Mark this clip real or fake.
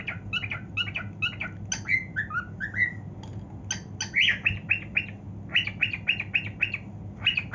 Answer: real